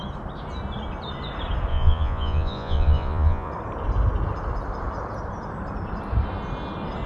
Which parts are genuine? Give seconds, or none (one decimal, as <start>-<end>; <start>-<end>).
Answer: 0.0-1.7; 3.5-7.1